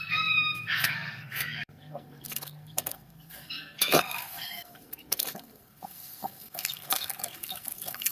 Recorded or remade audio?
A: remade